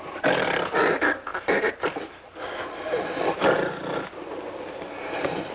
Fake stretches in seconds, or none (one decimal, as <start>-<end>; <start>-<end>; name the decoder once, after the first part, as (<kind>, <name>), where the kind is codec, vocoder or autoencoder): none